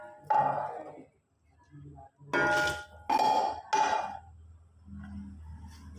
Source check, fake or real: real